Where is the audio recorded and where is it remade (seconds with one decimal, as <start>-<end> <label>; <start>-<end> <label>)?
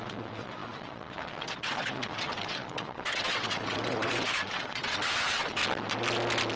0.0-5.6 remade; 5.6-6.6 recorded